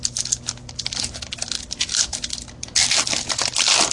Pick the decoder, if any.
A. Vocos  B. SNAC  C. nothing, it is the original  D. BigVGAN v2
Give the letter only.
C